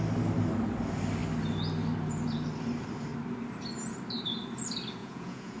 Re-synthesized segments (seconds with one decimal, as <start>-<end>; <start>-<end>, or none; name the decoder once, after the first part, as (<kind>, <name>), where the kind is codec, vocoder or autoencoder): 5.0-5.6 (vocoder, Vocos)